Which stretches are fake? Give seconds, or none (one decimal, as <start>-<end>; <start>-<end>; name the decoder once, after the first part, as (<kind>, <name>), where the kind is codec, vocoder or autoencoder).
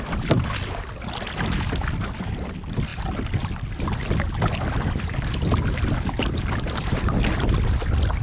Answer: none